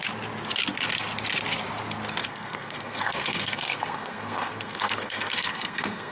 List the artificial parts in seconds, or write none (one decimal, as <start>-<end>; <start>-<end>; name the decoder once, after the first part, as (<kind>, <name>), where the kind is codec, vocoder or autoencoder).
2.2-6.1 (codec, SNAC)